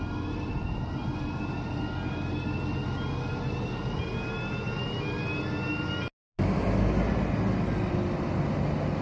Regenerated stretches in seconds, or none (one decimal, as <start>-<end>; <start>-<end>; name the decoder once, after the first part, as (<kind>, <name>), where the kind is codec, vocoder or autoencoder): none